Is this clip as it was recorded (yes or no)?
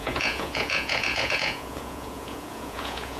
no